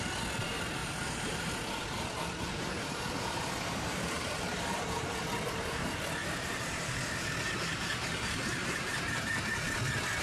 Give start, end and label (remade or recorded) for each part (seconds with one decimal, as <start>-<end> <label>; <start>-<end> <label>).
0.0-0.8 recorded; 0.8-1.5 remade; 1.5-2.6 recorded; 2.6-5.3 remade; 5.3-6.2 recorded; 6.2-9.4 remade; 9.4-10.2 recorded